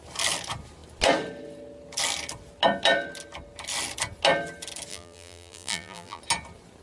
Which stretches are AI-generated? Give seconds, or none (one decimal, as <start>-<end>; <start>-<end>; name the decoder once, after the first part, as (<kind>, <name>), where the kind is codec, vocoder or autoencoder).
4.9-6.2 (vocoder, BigVGAN v2)